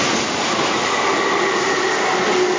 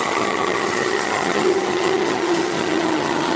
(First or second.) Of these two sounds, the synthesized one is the second